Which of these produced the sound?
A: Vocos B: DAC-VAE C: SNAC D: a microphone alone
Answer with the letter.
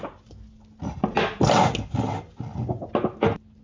D